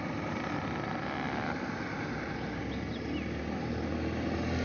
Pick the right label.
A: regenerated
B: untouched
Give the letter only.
B